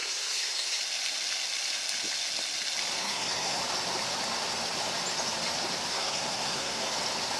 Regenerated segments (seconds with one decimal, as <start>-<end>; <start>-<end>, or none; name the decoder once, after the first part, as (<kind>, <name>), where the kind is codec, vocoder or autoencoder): 0.0-0.8 (codec, SNAC); 3.0-3.6; 5.9-6.9